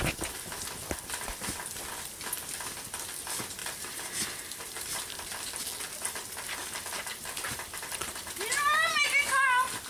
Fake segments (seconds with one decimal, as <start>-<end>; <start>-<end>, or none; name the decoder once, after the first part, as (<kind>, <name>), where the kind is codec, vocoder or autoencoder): 3.6-5.6 (vocoder, BigVGAN v2); 6.6-8.2